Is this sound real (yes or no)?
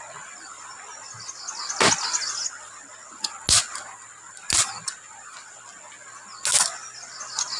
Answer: yes